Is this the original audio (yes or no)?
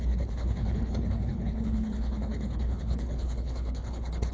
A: no